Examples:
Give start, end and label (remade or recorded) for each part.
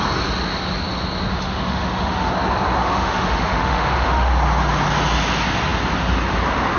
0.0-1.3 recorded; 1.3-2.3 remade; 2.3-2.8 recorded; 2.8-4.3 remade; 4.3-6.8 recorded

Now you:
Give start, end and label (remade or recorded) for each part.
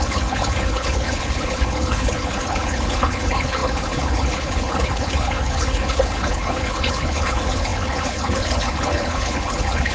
0.0-9.9 remade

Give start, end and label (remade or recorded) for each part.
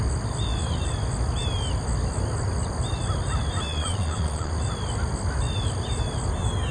0.0-3.7 recorded; 3.7-4.5 remade; 4.5-6.7 recorded